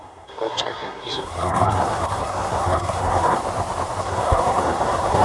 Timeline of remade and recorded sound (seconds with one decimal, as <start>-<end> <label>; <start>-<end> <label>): 0.0-3.4 remade; 3.4-4.0 recorded; 4.0-5.2 remade